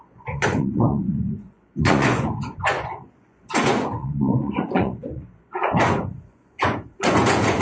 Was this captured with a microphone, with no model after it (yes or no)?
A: no